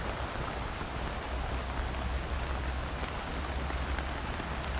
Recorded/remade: recorded